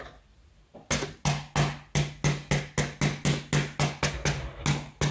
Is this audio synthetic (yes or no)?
no